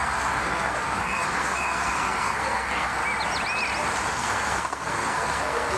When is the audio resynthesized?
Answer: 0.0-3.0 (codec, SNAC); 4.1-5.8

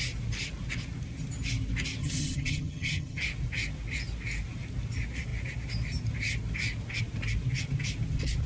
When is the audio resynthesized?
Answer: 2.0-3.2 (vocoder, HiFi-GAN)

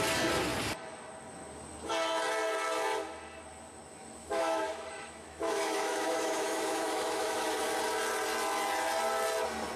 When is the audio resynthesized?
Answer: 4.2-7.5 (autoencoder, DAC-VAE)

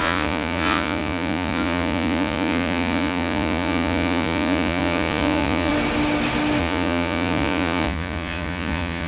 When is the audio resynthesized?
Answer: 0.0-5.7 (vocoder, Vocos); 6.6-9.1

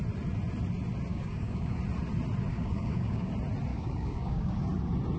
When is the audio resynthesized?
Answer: 1.1-1.8 (codec, DAC); 2.5-3.3; 3.7-4.5

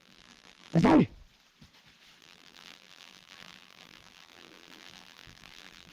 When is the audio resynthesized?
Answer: 0.0-1.0 (vocoder, BigVGAN v2); 2.2-5.9

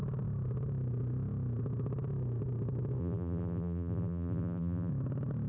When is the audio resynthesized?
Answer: 3.0-4.9 (vocoder, BigVGAN v2)